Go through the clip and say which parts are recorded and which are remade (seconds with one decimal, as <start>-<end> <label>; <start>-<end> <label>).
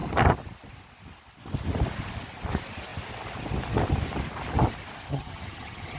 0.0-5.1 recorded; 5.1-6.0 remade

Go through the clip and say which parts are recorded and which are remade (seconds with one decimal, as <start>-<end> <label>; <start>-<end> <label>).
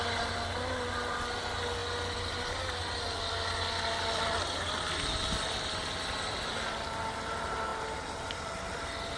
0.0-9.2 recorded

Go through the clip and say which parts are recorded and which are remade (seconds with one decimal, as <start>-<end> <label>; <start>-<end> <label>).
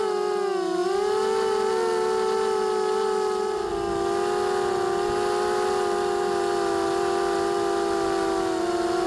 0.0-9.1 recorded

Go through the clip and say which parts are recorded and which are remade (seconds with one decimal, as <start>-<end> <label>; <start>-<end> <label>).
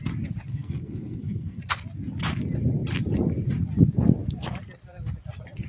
0.0-0.5 recorded; 0.5-1.6 remade; 1.6-5.7 recorded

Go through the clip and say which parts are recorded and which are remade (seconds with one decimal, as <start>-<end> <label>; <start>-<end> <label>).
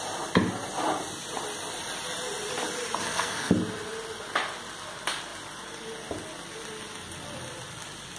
0.0-3.0 recorded; 3.0-3.5 remade; 3.5-8.2 recorded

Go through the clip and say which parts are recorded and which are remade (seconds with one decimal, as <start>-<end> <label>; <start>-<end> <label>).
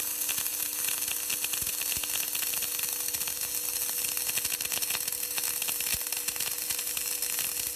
0.0-7.8 recorded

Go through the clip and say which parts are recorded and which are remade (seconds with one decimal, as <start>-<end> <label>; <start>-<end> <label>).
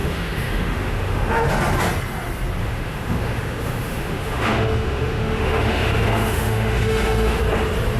0.0-1.5 remade; 1.5-2.6 recorded; 2.6-7.4 remade; 7.4-8.0 recorded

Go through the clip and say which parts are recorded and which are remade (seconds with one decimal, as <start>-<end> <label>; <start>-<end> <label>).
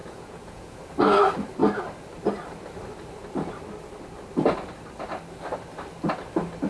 0.0-0.7 remade; 0.7-6.7 recorded